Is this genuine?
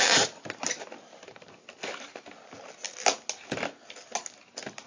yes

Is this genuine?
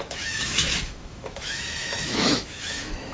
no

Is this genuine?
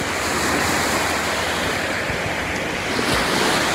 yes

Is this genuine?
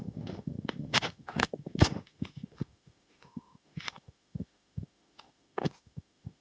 no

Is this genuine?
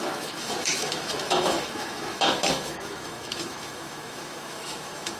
no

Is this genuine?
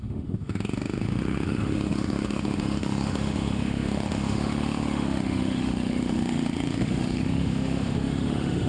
no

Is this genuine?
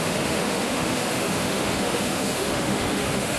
no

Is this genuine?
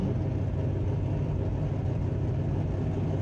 yes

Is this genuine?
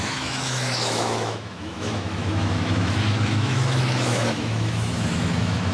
no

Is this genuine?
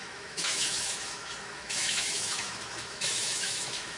no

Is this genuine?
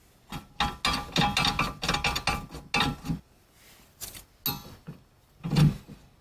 yes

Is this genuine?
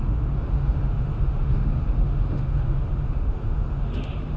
no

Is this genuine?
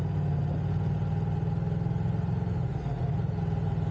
yes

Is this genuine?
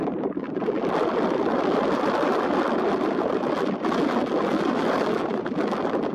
yes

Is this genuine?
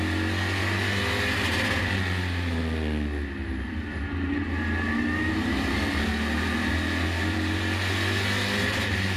yes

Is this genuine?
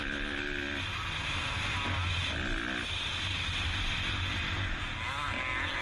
yes